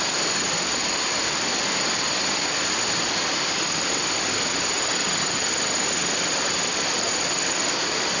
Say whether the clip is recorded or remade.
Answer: recorded